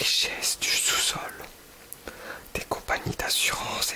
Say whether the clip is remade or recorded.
recorded